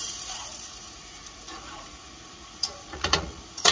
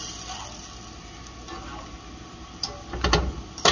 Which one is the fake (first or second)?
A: first